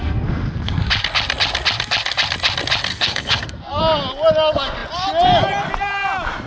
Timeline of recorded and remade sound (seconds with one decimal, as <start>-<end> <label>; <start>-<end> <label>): 0.0-0.8 remade; 0.8-2.9 recorded; 2.9-3.8 remade; 3.8-6.5 recorded